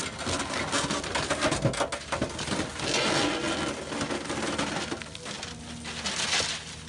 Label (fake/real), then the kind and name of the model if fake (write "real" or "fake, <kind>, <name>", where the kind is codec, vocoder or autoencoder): real